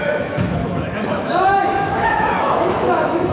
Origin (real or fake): fake